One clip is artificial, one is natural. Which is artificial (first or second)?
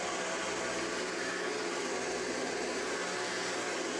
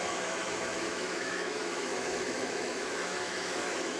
second